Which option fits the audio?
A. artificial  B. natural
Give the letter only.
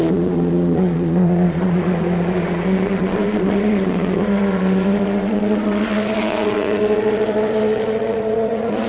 A